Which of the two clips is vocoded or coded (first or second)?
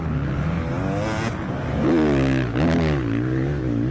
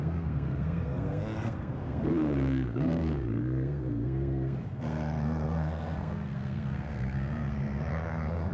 second